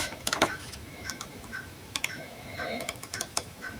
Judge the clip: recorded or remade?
remade